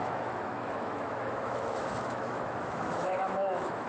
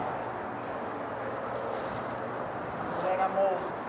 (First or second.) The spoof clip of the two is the first